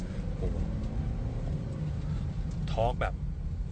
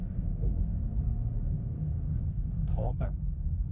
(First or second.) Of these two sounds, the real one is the first